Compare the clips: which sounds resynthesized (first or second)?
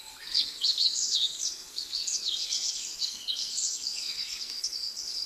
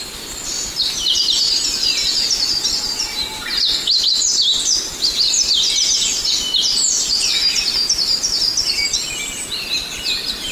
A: first